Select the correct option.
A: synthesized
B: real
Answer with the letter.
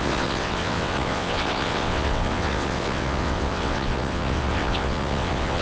A